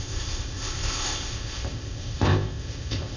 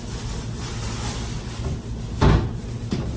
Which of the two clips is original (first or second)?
second